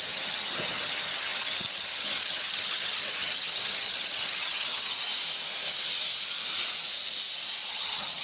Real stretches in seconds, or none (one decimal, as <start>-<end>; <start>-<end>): 5.1-7.7